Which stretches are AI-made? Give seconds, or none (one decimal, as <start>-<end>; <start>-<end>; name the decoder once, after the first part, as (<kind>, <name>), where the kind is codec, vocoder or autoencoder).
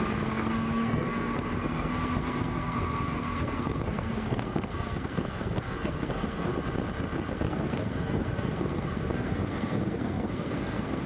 0.0-6.5 (codec, SNAC); 7.3-11.1